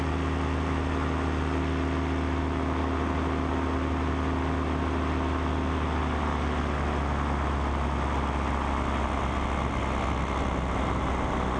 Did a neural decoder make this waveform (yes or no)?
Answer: no